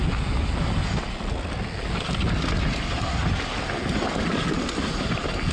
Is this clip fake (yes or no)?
no